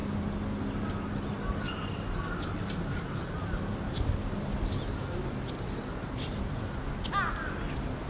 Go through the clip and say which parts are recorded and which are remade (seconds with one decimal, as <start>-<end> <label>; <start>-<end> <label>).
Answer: 0.0-8.1 recorded